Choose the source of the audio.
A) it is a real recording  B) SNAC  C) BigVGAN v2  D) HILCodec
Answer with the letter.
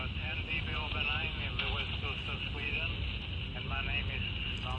A